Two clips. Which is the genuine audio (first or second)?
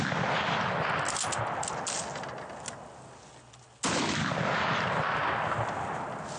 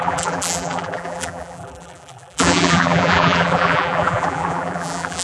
first